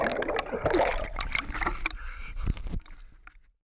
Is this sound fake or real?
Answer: real